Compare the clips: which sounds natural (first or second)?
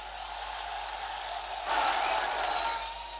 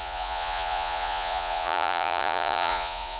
first